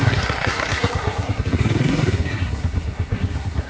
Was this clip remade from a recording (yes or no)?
yes